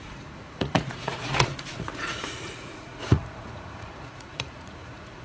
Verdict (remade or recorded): remade